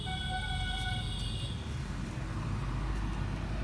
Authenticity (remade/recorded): recorded